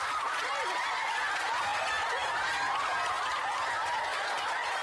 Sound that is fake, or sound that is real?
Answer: real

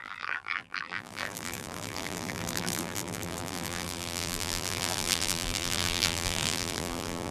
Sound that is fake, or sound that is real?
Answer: fake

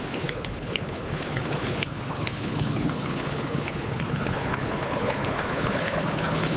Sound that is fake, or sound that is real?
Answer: fake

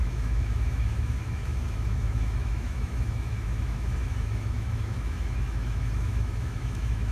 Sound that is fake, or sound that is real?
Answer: fake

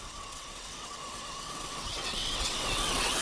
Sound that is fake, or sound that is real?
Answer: fake